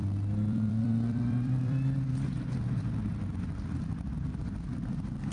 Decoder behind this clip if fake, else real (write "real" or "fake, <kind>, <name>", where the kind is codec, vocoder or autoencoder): fake, vocoder, BigVGAN v2